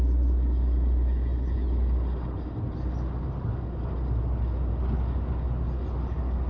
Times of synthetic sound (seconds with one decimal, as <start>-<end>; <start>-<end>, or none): none